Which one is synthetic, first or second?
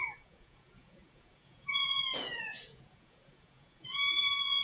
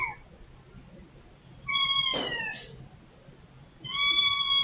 first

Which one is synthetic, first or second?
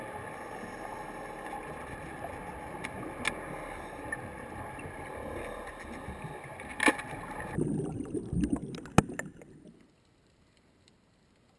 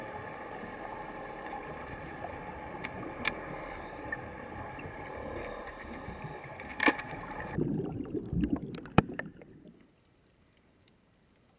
second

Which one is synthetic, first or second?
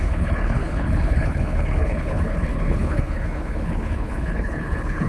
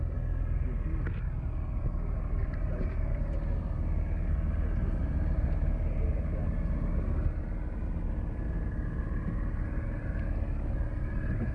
first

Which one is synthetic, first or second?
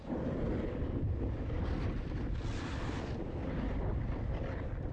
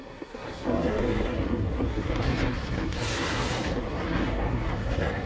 second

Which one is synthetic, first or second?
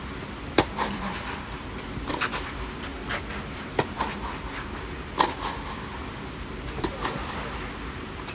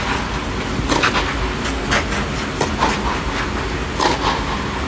first